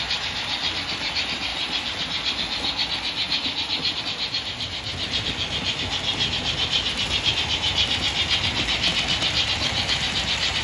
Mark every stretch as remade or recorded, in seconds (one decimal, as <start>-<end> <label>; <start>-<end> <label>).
0.0-10.6 recorded